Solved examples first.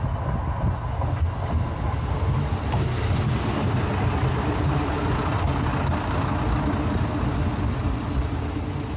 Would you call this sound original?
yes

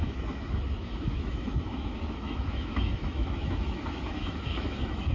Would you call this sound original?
no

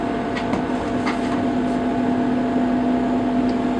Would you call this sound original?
yes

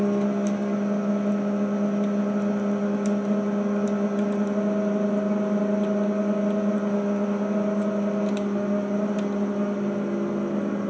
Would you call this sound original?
yes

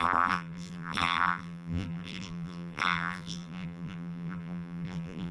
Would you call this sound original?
no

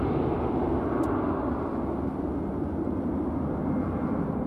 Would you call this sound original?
yes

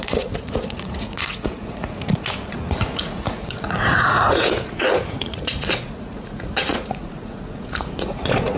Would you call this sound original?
no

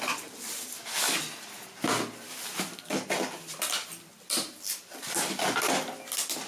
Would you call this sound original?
yes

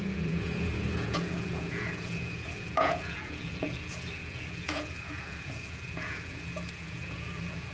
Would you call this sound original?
no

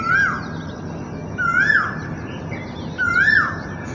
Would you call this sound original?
yes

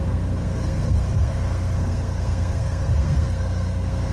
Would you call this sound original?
no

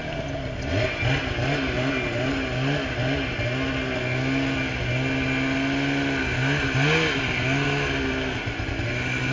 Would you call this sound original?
yes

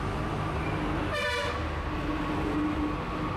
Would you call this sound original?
yes